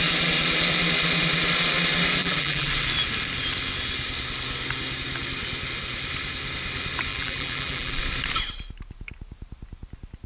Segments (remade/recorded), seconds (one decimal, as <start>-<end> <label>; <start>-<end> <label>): 0.0-2.2 recorded; 2.2-2.7 remade; 2.7-7.1 recorded; 7.1-8.0 remade; 8.0-10.3 recorded

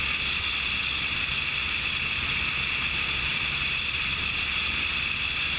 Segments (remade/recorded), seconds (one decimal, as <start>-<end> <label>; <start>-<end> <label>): 0.0-3.3 recorded; 3.3-4.9 remade; 4.9-5.6 recorded

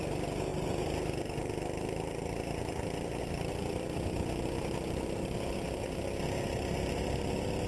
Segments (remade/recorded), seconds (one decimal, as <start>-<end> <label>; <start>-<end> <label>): 0.0-7.7 recorded

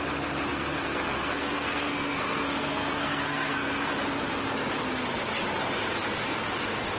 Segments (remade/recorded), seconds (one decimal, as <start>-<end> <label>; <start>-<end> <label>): 0.0-0.5 recorded; 0.5-3.9 remade; 3.9-7.0 recorded

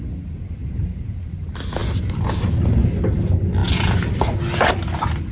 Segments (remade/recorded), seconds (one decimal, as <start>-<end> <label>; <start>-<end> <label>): 0.0-5.3 recorded

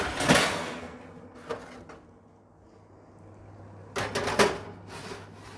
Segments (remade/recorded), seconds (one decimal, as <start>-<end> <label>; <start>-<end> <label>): 0.0-0.5 recorded; 0.5-1.0 remade; 1.0-5.6 recorded

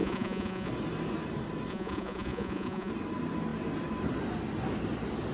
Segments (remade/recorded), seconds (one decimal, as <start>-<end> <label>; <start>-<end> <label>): 0.0-0.7 remade; 0.7-1.7 recorded; 1.7-2.9 remade; 2.9-5.3 recorded

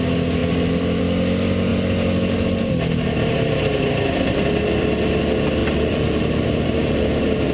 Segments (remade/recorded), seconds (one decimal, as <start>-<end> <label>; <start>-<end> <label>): 0.0-0.4 recorded; 0.4-1.0 remade; 1.0-5.6 recorded; 5.6-7.5 remade